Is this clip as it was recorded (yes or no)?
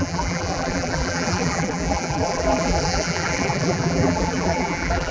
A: no